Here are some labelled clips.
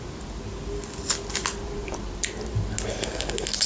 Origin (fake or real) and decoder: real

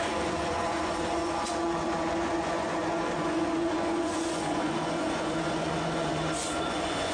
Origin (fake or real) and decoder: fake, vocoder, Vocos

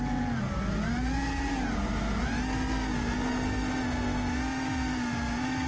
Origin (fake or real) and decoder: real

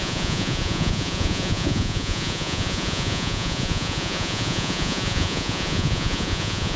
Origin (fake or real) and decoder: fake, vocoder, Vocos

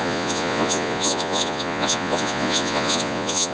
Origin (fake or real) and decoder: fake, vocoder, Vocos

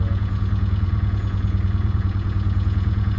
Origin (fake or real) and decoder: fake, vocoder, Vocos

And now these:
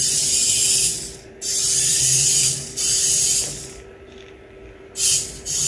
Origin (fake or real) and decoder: real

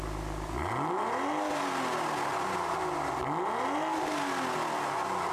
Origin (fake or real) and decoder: real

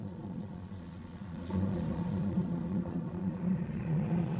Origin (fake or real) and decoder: fake, vocoder, Vocos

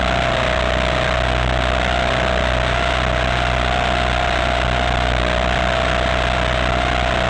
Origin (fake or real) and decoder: real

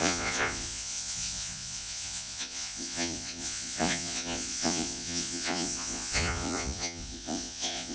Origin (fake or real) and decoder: fake, vocoder, Vocos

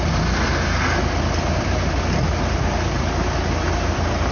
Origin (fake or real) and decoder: real